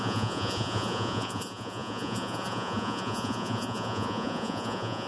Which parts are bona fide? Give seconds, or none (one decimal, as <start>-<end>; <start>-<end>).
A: none